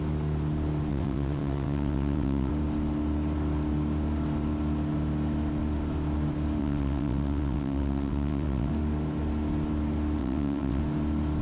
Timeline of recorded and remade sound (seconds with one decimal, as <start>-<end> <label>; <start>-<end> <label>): 0.0-0.9 recorded; 0.9-2.5 remade; 2.5-6.6 recorded; 6.6-8.7 remade; 8.7-10.2 recorded; 10.2-10.8 remade; 10.8-11.4 recorded